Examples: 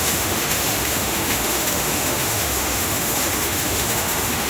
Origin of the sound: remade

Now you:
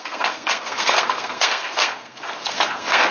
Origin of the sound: remade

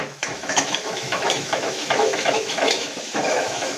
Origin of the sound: remade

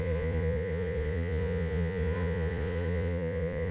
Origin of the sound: remade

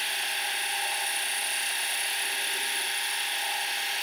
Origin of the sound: recorded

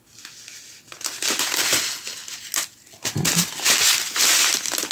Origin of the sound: recorded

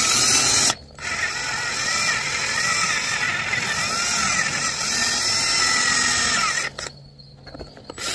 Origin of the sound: recorded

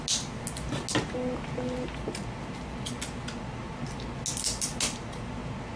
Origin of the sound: recorded